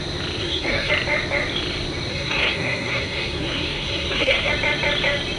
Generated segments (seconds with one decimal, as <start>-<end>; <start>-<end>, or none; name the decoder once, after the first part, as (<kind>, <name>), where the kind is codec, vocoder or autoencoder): 0.4-0.9 (codec, SNAC); 2.1-4.5

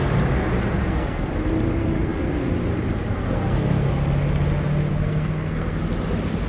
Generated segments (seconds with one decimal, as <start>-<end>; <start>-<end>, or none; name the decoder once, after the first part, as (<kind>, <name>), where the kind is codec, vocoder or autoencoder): 0.8-1.3 (codec, SNAC); 1.8-2.5; 3.1-3.9; 4.9-5.8

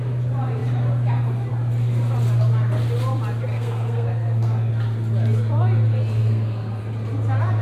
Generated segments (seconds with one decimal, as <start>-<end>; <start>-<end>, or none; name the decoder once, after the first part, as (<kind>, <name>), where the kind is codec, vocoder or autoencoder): 3.5-4.7 (codec, SNAC); 6.2-6.8

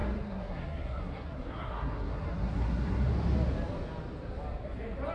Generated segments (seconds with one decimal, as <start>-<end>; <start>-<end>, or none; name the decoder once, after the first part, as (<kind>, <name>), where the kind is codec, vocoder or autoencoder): 0.0-3.1 (codec, SNAC)